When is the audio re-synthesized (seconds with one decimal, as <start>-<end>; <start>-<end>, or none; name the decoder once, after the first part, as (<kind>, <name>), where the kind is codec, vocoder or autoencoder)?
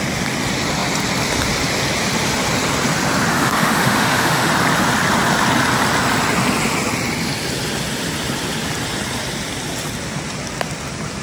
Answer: 3.3-4.5 (autoencoder, DAC-VAE)